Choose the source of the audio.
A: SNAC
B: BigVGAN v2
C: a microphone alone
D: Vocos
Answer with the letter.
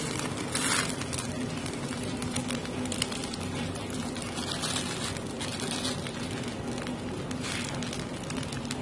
C